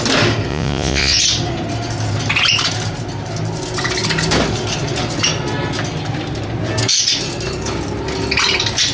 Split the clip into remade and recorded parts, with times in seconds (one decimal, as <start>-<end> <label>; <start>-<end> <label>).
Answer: 0.0-0.5 recorded; 0.5-1.2 remade; 1.2-8.9 recorded